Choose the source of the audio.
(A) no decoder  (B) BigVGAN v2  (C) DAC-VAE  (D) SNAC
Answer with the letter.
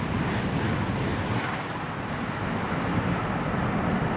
A